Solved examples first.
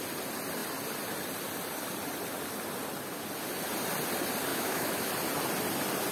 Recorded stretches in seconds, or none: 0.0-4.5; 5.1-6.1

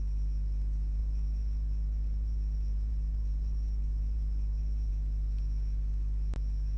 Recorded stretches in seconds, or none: 0.0-1.0; 4.9-6.8

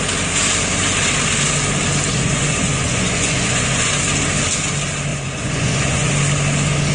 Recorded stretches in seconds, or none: 0.0-2.1; 3.9-5.1; 6.1-6.9

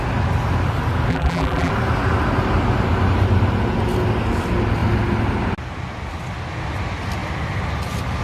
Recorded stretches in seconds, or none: 0.0-1.1; 1.7-8.2

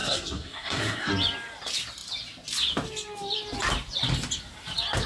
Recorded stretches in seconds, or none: 1.1-5.1

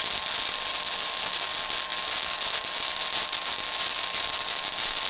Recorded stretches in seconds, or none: 0.0-5.1

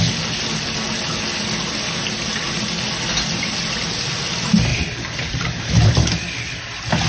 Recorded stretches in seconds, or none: 0.0-4.7; 6.1-7.1